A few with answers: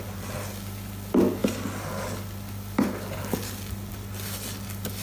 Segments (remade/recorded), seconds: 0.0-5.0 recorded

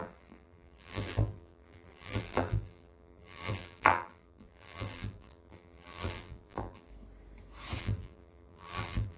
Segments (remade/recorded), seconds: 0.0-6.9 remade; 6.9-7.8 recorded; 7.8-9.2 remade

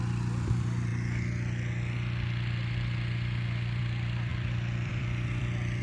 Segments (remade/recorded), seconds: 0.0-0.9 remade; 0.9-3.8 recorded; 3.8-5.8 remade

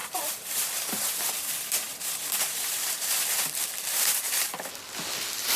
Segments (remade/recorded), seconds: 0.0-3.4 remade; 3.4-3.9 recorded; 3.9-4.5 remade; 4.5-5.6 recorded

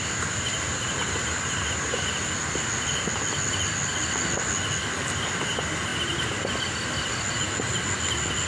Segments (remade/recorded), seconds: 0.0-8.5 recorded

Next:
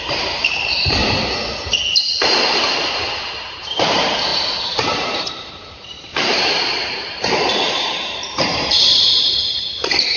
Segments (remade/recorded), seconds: 0.0-1.0 remade; 1.0-3.2 recorded; 3.2-10.2 remade

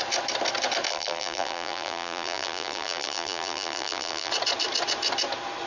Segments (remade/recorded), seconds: 0.0-0.9 recorded; 0.9-4.3 remade; 4.3-5.7 recorded

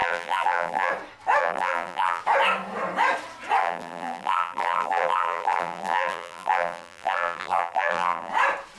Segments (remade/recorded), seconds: 0.0-0.9 remade; 0.9-1.4 recorded; 1.4-2.2 remade; 2.2-3.6 recorded; 3.6-8.3 remade; 8.3-8.8 recorded